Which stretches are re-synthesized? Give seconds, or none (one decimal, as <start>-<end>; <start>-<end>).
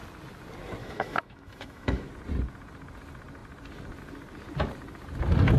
0.8-2.1